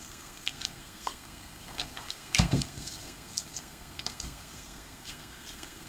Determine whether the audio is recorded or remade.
remade